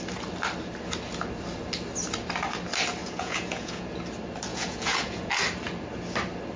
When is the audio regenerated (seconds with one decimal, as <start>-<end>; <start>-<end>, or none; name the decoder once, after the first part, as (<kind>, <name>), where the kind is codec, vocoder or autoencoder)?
3.0-4.0 (vocoder, Vocos); 4.5-5.3